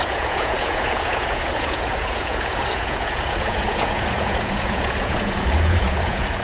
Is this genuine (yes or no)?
no